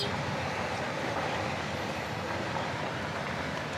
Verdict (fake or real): real